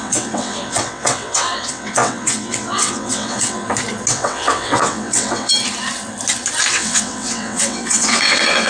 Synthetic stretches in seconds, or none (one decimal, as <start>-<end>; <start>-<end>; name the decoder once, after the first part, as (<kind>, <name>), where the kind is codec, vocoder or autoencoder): 0.0-3.6 (vocoder, WaveNeXt); 4.1-5.5; 6.7-8.7